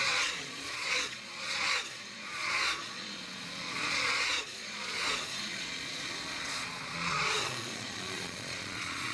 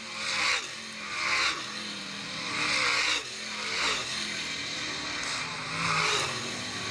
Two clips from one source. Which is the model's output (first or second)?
first